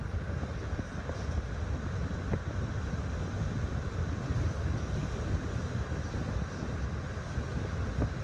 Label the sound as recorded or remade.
recorded